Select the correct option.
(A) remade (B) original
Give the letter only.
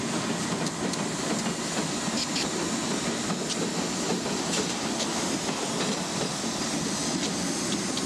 B